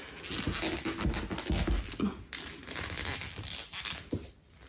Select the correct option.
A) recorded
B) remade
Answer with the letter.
A